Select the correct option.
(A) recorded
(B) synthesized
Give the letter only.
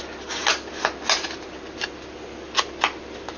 A